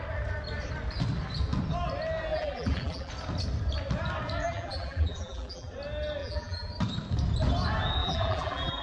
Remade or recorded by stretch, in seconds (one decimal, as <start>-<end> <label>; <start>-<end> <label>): 0.0-2.3 recorded; 2.3-3.1 remade; 3.1-4.4 recorded; 4.4-5.7 remade; 5.7-6.2 recorded; 6.2-6.7 remade; 6.7-8.0 recorded; 8.0-8.8 remade